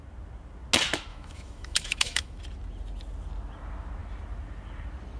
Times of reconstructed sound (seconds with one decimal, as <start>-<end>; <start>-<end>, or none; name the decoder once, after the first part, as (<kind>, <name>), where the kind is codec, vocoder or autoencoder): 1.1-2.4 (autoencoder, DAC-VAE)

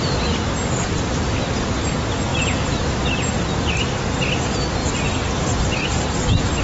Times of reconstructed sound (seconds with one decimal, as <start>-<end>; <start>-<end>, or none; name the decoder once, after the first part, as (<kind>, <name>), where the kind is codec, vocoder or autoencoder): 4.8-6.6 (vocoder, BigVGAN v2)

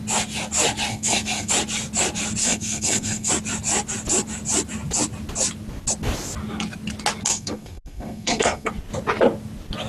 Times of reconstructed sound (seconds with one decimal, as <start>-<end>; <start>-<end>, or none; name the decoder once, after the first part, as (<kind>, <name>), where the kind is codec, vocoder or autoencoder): 0.9-1.5 (codec, SNAC); 2.4-3.3; 7.3-8.7

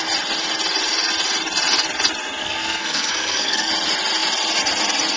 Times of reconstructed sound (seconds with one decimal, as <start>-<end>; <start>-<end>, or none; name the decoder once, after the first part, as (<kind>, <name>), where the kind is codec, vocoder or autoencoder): 2.4-3.7 (codec, SNAC)

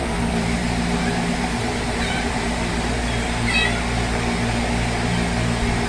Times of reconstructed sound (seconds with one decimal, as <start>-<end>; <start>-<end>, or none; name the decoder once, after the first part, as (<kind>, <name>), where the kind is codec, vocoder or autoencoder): 0.0-0.6 (vocoder, BigVGAN v2); 1.6-2.7

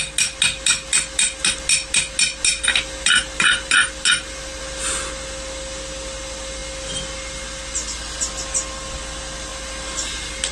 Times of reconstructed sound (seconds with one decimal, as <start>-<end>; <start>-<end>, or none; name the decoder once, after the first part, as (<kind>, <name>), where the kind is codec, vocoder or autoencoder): none

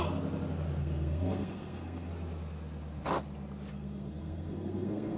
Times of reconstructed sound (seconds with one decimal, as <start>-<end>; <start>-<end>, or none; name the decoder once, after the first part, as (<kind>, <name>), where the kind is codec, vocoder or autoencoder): 0.8-2.1 (codec, SNAC); 3.7-5.2

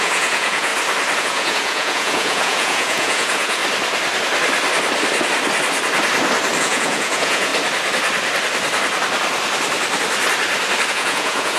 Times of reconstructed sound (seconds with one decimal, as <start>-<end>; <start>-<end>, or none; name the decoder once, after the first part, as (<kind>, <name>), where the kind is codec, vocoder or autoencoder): 0.0-0.7 (vocoder, Vocos); 1.2-3.6; 6.6-7.5; 10.9-11.6